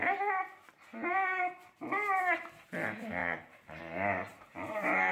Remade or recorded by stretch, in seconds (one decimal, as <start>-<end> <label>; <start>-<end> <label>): 0.0-3.2 recorded; 3.2-3.8 remade; 3.8-4.3 recorded; 4.3-5.1 remade